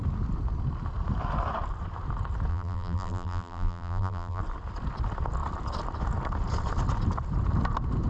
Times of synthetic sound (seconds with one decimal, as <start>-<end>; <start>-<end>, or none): 2.5-4.4